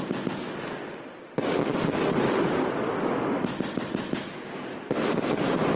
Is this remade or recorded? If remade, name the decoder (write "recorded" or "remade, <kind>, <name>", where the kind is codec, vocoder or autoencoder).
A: recorded